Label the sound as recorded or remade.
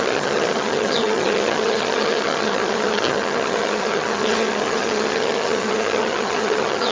remade